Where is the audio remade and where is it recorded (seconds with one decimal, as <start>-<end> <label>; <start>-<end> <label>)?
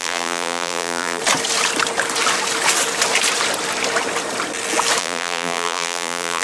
0.0-1.2 remade; 1.2-5.0 recorded; 5.0-6.4 remade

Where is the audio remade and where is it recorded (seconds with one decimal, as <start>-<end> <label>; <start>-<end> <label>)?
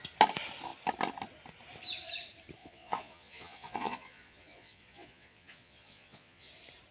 0.0-2.6 recorded; 2.6-6.5 remade; 6.5-6.9 recorded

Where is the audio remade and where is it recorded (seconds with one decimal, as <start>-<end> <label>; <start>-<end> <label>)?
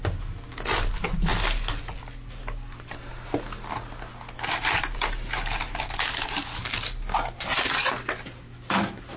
0.0-7.5 recorded; 7.5-8.1 remade; 8.1-9.2 recorded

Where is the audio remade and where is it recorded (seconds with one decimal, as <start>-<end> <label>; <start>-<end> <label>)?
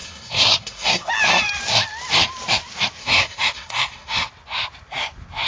0.0-1.1 remade; 1.1-3.0 recorded; 3.0-4.3 remade; 4.3-5.5 recorded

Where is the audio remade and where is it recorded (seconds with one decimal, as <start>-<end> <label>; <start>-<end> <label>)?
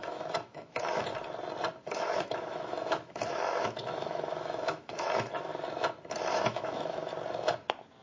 0.0-1.1 remade; 1.1-1.8 recorded; 1.8-5.5 remade; 5.5-6.4 recorded; 6.4-7.1 remade; 7.1-8.0 recorded